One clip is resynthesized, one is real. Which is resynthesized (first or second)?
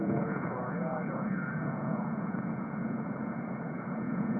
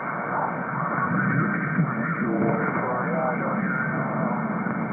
first